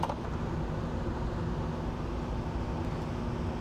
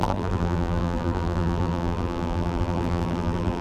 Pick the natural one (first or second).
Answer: first